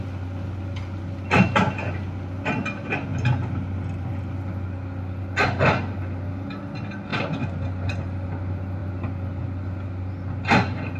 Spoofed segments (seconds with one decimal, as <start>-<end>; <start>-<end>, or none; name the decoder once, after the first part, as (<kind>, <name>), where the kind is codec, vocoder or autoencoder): none